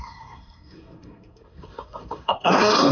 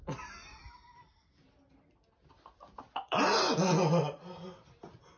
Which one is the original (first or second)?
second